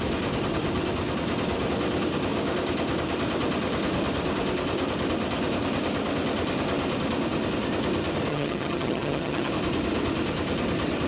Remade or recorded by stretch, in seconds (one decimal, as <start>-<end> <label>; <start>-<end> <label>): 0.0-8.3 recorded; 8.3-9.5 remade; 9.5-11.1 recorded